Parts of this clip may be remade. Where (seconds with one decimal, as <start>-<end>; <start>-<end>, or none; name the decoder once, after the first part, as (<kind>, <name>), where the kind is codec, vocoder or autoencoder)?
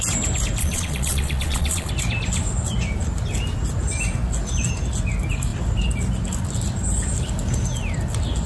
0.6-1.9 (vocoder, Vocos)